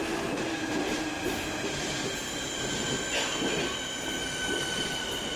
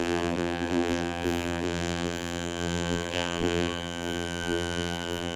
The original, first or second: first